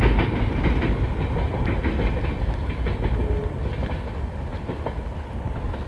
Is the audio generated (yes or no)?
no